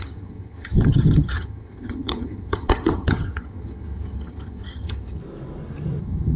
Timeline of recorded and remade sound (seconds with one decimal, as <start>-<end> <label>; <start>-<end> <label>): 0.0-5.2 remade; 5.2-6.0 recorded; 6.0-6.4 remade